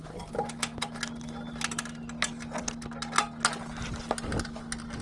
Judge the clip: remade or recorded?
recorded